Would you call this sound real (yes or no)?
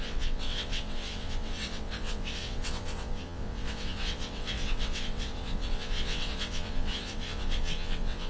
no